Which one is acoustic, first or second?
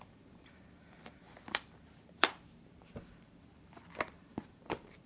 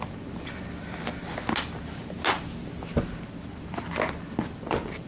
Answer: second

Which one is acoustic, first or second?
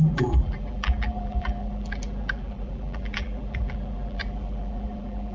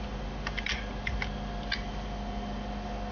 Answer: second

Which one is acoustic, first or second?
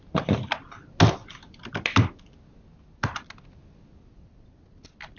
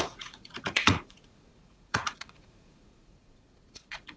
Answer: first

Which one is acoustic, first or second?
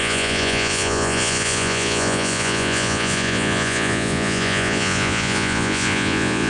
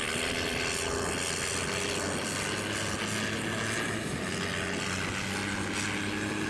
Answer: second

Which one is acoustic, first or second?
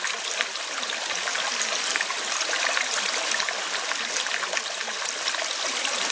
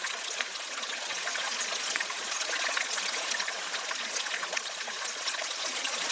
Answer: first